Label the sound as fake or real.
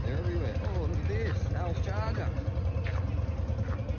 real